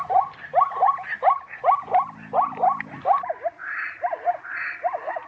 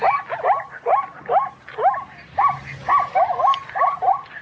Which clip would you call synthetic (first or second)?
first